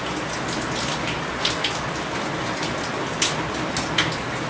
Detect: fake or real real